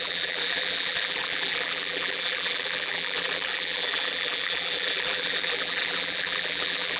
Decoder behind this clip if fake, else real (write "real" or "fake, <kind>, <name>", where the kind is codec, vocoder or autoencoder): fake, vocoder, BigVGAN v2